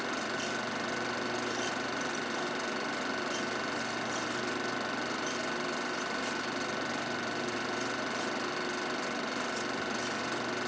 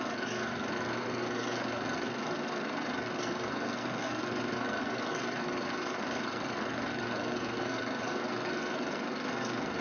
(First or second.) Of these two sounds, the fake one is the second